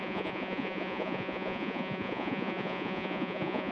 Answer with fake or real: fake